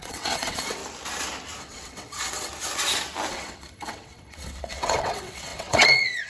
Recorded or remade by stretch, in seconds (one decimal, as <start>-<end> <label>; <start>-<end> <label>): 0.0-0.8 remade; 0.8-1.6 recorded; 1.6-2.5 remade; 2.5-3.3 recorded; 3.3-6.3 remade